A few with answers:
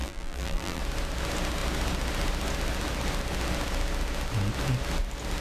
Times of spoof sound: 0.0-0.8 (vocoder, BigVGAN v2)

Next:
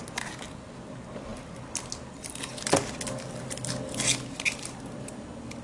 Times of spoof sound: none

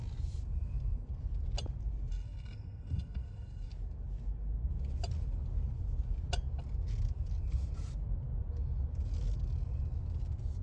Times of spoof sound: 2.1-3.7 (codec, SNAC)

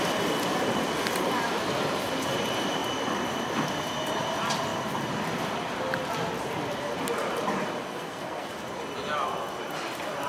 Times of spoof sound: 7.8-8.5 (codec, SNAC)

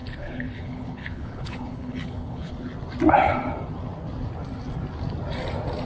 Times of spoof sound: 0.0-2.5 (codec, HILCodec)

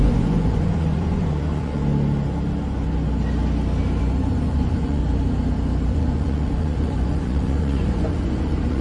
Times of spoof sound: 0.0-1.8 (vocoder, Vocos); 4.0-5.0; 5.9-8.8